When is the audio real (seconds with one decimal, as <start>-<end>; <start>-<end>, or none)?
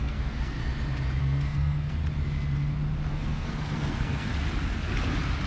0.6-1.2; 2.0-3.1; 4.3-5.5